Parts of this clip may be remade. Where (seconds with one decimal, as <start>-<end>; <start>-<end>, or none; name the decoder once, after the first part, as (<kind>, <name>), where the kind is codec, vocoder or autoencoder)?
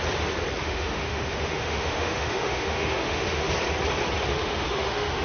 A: 0.6-3.5 (autoencoder, DAC-VAE); 4.3-5.2